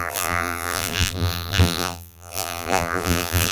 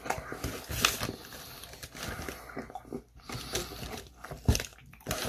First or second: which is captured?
second